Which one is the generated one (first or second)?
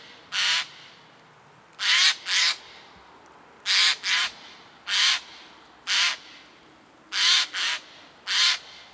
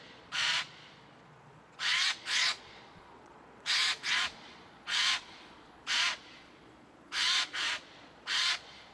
second